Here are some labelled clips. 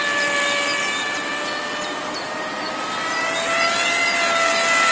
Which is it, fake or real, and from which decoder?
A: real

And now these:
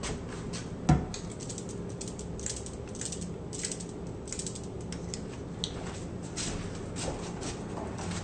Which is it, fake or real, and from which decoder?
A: real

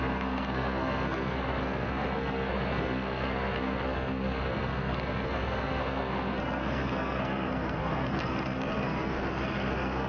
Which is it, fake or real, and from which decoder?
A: fake, codec, SNAC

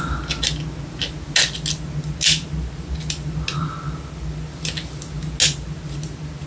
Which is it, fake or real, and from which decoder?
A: real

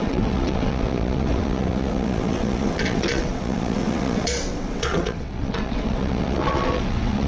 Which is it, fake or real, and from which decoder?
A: fake, vocoder, WaveNeXt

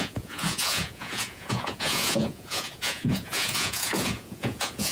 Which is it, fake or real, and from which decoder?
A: fake, vocoder, Vocos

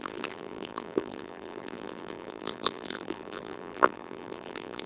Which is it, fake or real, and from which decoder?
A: fake, vocoder, BigVGAN v2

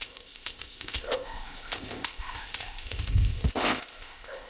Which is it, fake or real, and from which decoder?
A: fake, codec, ZipCodec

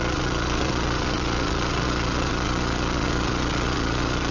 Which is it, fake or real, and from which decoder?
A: fake, vocoder, Vocos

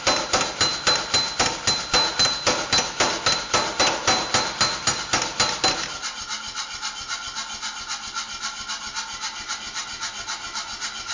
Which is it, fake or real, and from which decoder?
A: real